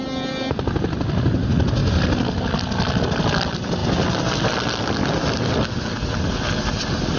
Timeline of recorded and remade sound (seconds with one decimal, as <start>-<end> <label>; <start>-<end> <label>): 0.0-7.2 recorded